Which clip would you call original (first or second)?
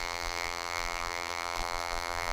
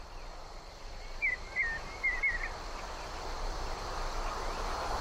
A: second